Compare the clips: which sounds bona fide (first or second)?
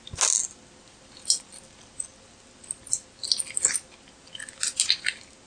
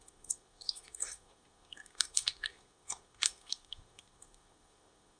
first